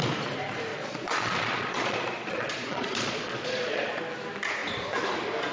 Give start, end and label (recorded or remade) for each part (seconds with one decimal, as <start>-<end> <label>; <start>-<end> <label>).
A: 0.0-0.7 recorded; 0.7-4.0 remade; 4.0-5.5 recorded